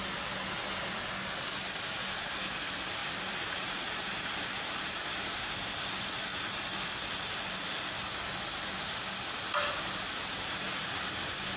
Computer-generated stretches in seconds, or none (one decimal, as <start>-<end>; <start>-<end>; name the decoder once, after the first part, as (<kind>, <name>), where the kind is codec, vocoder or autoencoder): 3.0-4.9 (vocoder, BigVGAN v2); 6.3-6.9